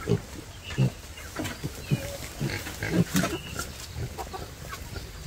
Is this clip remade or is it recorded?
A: recorded